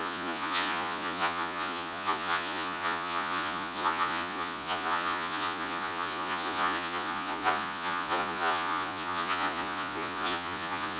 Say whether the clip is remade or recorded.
remade